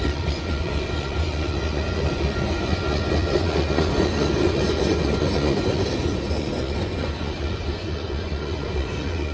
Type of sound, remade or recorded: remade